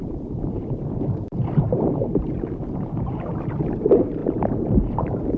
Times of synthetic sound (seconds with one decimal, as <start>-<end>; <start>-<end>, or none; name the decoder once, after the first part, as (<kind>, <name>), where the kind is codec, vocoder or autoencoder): 0.0-5.4 (vocoder, BigVGAN v2)